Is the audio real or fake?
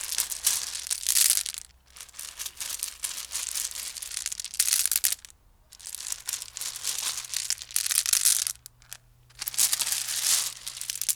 real